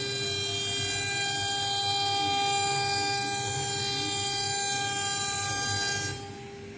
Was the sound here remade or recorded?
recorded